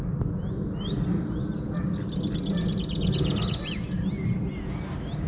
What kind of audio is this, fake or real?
real